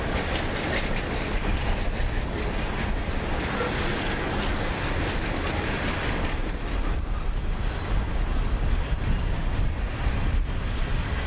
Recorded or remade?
recorded